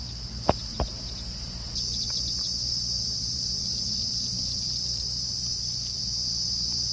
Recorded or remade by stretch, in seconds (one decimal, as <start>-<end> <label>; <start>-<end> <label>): 0.0-2.6 recorded; 2.6-6.9 remade